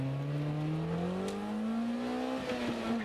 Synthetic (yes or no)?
no